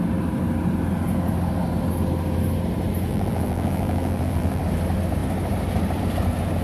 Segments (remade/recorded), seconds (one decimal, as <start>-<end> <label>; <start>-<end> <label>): 0.0-3.1 recorded; 3.1-4.6 remade; 4.6-6.6 recorded